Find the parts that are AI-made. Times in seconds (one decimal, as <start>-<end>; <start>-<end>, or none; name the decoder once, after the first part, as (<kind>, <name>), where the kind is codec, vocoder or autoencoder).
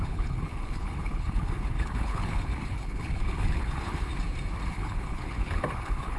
0.0-4.1 (codec, HILCodec); 4.7-6.2